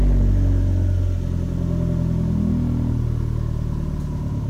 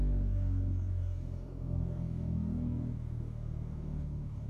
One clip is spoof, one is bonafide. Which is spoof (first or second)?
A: second